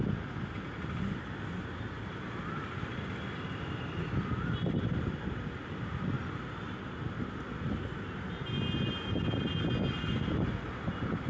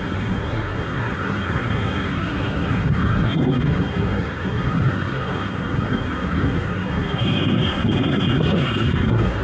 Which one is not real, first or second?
second